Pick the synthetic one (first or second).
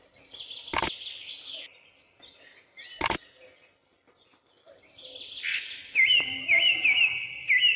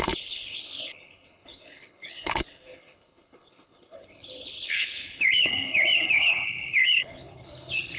second